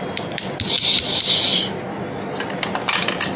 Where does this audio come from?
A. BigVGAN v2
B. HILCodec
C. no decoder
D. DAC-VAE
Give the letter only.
C